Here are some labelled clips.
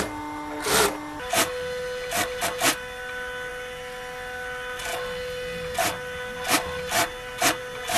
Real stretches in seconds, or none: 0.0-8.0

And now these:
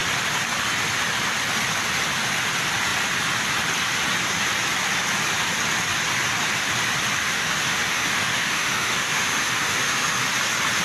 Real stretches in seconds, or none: 0.0-7.2; 10.2-10.8

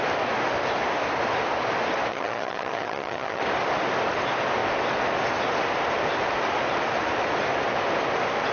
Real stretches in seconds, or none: 0.0-2.1; 3.4-8.5

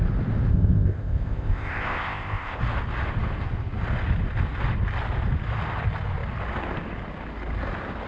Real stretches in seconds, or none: 0.0-0.5; 2.6-8.1

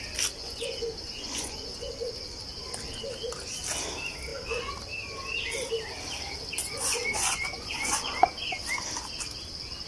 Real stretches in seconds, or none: 0.0-0.4; 1.9-6.6; 8.3-9.9

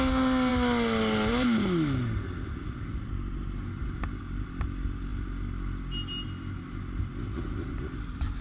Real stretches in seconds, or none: 0.0-8.4

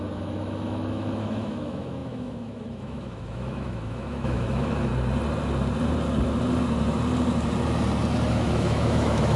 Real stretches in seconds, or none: 4.9-8.3